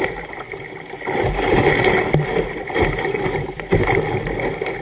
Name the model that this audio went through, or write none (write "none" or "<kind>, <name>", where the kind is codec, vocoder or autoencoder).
none